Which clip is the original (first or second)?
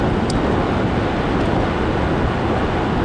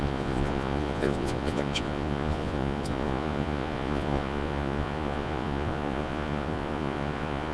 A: first